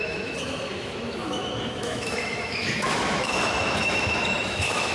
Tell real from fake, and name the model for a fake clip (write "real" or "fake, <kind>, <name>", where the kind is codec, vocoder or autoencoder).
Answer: fake, autoencoder, DAC-VAE